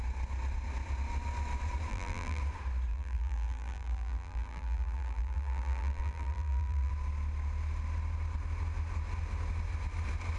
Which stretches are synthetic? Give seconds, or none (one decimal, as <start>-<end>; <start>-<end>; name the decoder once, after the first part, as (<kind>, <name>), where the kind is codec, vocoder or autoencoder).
1.9-2.4 (vocoder, BigVGAN v2); 2.9-6.9